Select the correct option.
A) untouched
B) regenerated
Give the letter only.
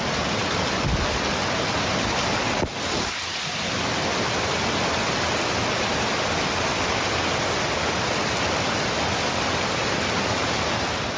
A